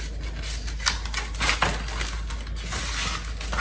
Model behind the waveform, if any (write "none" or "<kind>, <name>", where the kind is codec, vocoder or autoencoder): none